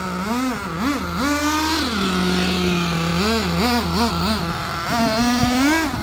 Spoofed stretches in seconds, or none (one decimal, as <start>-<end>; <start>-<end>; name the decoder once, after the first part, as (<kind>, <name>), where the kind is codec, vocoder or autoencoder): none

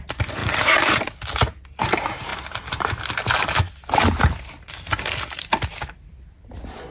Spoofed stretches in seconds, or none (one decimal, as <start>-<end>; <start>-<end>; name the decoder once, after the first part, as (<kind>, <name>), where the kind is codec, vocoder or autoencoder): 0.4-1.0 (vocoder, BigVGAN v2)

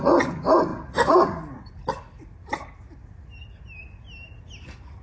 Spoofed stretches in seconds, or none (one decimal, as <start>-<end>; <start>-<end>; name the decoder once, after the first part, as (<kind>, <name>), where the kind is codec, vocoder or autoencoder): 0.7-1.7 (vocoder, BigVGAN v2)

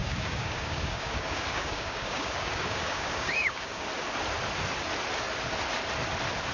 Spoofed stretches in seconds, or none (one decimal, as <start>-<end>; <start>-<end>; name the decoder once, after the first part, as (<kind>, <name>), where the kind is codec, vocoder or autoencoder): 0.0-3.9 (codec, DAC)

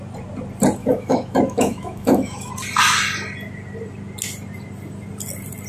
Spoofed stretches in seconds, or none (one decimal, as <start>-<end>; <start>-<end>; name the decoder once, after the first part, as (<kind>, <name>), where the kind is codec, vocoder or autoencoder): 0.8-2.5 (autoencoder, DAC-VAE)